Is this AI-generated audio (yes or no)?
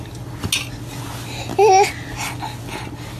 no